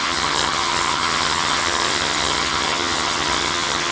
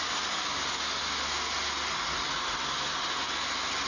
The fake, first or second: first